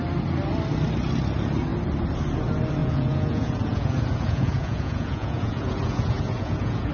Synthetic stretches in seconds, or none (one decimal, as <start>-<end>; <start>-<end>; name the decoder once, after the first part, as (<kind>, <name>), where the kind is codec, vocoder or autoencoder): 2.8-6.9 (vocoder, Vocos)